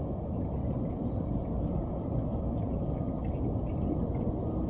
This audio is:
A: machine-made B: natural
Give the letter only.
B